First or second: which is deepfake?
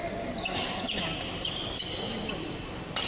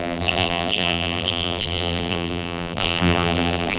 second